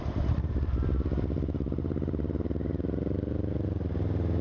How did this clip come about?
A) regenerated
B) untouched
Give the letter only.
B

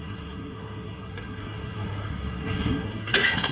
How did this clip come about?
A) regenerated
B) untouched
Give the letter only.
A